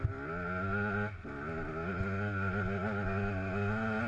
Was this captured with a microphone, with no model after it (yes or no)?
yes